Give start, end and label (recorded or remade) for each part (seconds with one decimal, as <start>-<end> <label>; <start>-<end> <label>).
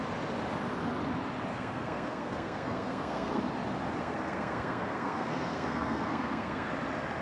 0.0-1.5 recorded; 1.5-3.4 remade; 3.4-4.0 recorded; 4.0-6.7 remade; 6.7-7.2 recorded